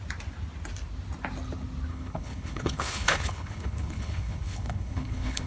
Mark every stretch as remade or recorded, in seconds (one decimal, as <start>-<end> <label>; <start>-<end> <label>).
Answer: 0.0-1.9 recorded; 1.9-5.5 remade